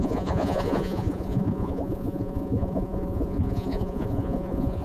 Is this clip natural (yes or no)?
no